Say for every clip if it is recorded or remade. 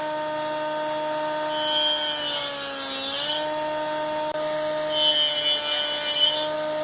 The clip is recorded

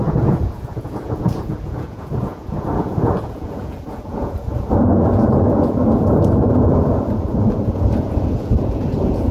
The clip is remade